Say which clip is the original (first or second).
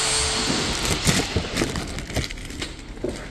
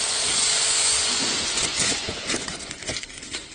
first